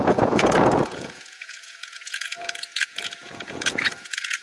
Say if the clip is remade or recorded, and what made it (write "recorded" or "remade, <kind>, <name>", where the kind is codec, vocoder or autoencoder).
remade, vocoder, Vocos